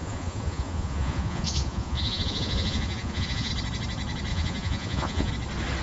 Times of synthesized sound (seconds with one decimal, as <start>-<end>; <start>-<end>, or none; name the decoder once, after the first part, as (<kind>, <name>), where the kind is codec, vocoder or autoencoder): 0.0-3.5 (vocoder, Vocos); 4.3-5.3